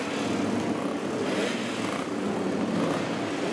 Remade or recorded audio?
recorded